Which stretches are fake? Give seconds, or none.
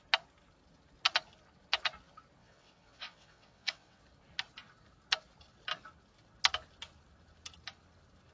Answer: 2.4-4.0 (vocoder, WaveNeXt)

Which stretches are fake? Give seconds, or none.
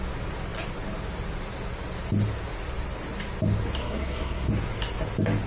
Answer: 3.8-4.5 (codec, SNAC)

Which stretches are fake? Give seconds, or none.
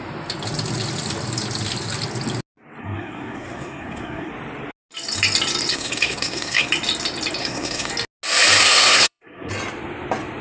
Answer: 2.8-4.3 (codec, SNAC); 5.7-6.7; 7.4-7.9; 8.6-9.5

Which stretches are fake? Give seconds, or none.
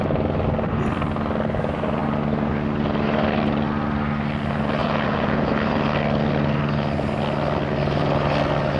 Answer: 4.8-5.5 (vocoder, Vocos)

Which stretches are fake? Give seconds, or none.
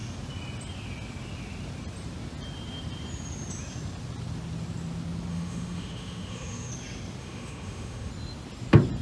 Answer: 5.3-6.7 (autoencoder, DAC-VAE); 7.2-8.1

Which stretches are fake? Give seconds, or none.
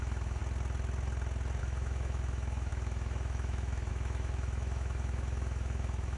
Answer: 0.0-0.4 (autoencoder, DAC-VAE); 1.6-6.2